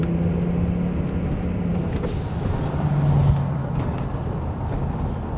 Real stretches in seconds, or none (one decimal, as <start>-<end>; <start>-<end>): 0.0-5.4

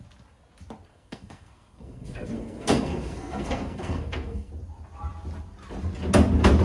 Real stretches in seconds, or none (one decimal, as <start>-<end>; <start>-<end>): 0.0-0.9; 4.5-6.6

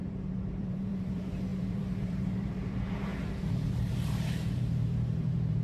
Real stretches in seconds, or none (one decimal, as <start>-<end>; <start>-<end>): none

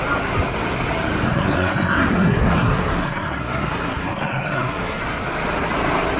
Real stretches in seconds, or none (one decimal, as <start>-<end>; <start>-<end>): 0.0-1.3; 5.0-6.2

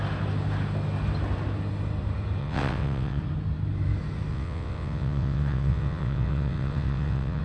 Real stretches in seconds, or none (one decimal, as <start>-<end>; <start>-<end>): 0.0-2.4; 3.2-4.3

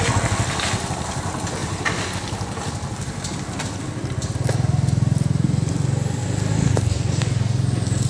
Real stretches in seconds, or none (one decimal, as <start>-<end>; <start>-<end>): 0.0-8.1

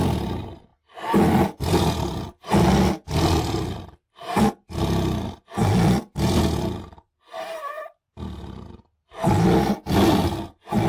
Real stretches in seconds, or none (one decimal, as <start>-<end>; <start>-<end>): 0.0-10.9